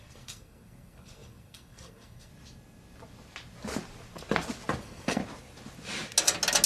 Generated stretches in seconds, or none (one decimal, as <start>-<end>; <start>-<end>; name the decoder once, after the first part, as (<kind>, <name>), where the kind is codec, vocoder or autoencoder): 0.0-2.3 (codec, SNAC); 4.8-5.2